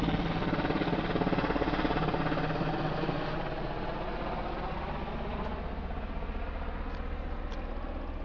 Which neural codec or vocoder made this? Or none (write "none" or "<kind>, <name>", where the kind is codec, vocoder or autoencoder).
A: none